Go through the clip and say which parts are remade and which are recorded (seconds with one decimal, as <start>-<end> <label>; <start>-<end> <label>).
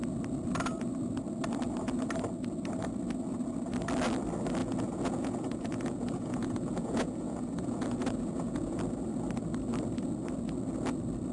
0.0-4.6 recorded; 4.6-8.8 remade; 8.8-11.3 recorded